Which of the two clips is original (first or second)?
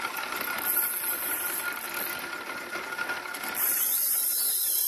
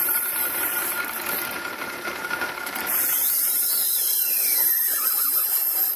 first